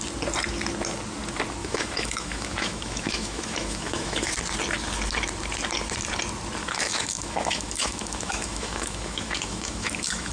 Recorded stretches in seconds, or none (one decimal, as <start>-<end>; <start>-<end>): 0.0-1.6; 4.3-6.6